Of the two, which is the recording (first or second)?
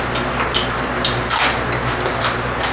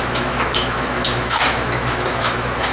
first